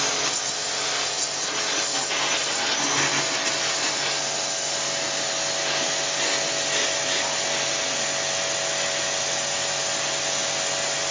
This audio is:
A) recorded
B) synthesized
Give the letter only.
A